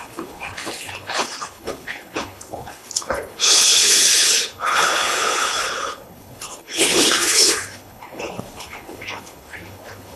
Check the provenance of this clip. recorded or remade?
remade